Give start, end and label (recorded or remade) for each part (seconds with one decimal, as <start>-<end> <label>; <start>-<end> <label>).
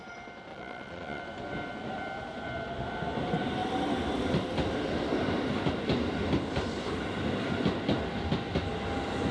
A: 0.0-0.5 recorded; 0.5-1.2 remade; 1.2-9.3 recorded